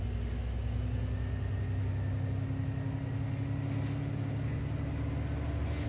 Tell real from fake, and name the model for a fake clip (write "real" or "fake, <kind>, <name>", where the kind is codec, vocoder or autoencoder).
real